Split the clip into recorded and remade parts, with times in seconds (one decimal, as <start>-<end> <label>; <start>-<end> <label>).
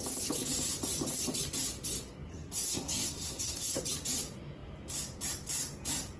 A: 0.0-2.3 recorded; 2.3-3.8 remade; 3.8-6.2 recorded